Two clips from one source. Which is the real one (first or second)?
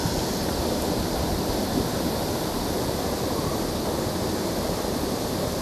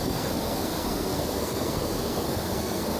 first